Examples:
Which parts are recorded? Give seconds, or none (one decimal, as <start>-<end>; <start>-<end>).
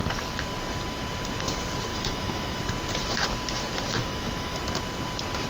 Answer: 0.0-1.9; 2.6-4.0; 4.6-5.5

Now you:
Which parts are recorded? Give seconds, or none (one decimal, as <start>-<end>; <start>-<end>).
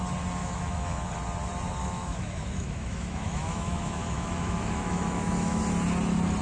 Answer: 0.0-0.4; 1.1-1.8; 5.6-6.4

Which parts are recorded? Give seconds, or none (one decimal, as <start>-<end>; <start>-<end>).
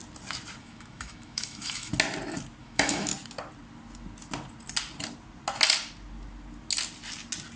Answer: 0.0-0.6; 1.9-2.6; 3.1-7.6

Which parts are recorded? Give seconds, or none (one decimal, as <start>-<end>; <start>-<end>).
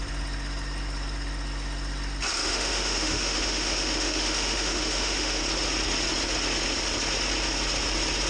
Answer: 0.0-2.4; 5.4-8.3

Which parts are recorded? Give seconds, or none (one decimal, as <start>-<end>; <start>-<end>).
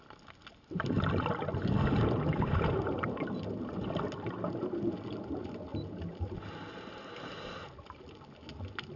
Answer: 0.0-9.0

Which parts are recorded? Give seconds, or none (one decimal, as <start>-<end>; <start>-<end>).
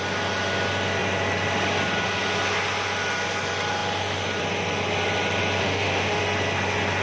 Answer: 0.0-5.6; 6.2-7.0